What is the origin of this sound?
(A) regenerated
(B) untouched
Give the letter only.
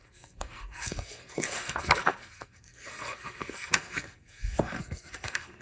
A